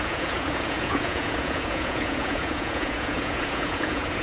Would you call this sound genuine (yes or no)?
no